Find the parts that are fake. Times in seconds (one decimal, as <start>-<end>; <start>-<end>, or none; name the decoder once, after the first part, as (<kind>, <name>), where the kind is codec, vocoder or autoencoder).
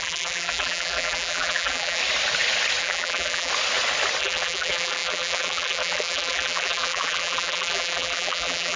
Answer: 0.0-2.0 (vocoder, BigVGAN v2); 2.8-3.5; 4.2-8.8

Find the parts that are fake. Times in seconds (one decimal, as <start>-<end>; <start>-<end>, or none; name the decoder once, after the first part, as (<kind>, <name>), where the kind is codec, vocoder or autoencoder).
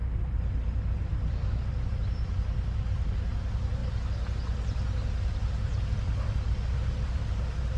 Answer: none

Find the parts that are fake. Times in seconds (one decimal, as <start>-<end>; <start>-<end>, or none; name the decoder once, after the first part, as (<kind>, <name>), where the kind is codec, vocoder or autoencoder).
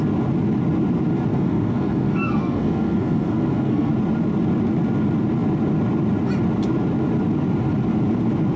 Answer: 1.3-3.9 (codec, SNAC)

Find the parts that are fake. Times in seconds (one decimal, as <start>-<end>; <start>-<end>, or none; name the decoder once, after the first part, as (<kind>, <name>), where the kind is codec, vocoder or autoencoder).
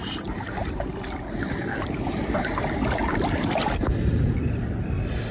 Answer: 0.0-0.9 (vocoder, BigVGAN v2)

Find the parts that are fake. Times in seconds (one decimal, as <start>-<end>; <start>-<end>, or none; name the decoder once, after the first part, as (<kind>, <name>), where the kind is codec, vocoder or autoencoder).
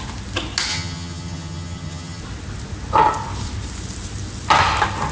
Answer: 0.7-2.2 (vocoder, HiFi-GAN)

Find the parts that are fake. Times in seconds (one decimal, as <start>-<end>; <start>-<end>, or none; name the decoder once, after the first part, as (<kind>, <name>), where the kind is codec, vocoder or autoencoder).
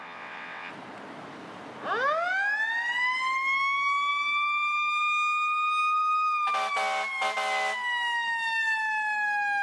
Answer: 0.0-0.7 (vocoder, WaveNeXt)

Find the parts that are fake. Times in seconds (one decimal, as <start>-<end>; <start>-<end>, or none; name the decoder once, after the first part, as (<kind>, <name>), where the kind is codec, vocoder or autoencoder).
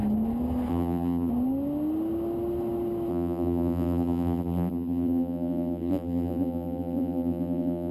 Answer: 0.7-1.3 (vocoder, BigVGAN v2); 3.1-7.9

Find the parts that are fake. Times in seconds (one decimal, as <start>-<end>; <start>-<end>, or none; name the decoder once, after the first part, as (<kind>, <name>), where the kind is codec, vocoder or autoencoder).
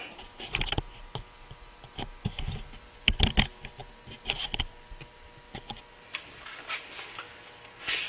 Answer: none